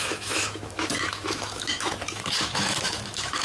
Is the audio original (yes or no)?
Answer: no